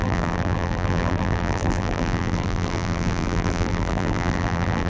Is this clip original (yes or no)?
no